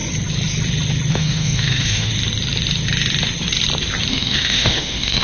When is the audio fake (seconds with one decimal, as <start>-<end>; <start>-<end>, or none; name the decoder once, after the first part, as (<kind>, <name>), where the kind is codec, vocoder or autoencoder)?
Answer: 1.1-2.1 (autoencoder, DAC-VAE); 4.1-5.2